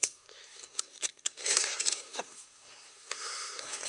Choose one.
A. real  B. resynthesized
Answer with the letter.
B